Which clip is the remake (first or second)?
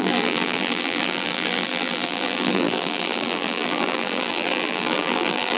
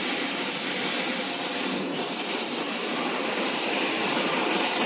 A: first